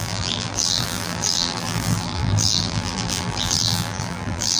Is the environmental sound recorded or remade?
remade